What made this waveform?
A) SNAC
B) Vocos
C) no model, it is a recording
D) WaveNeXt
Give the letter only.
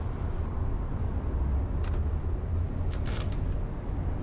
C